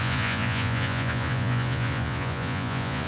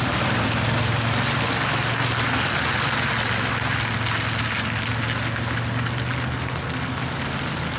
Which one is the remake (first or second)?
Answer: first